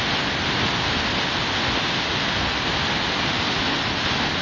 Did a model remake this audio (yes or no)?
no